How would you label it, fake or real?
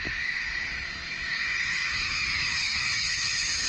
fake